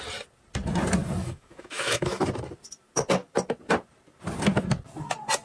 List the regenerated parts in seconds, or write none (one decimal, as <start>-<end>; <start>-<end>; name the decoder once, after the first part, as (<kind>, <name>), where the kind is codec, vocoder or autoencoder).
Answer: 1.2-2.2 (autoencoder, DAC-VAE)